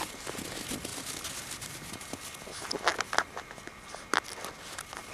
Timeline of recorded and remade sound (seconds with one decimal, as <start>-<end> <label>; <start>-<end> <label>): 0.0-5.1 recorded